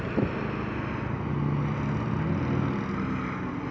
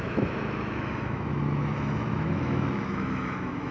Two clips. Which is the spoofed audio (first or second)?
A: second